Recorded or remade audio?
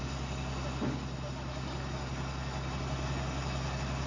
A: recorded